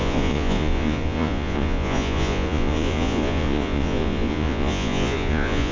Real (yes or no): no